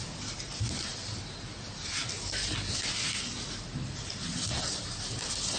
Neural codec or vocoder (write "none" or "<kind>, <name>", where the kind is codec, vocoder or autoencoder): none